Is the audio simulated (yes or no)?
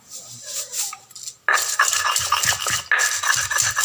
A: no